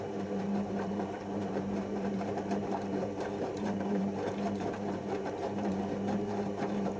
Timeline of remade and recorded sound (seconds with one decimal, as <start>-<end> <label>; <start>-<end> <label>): 0.0-7.0 remade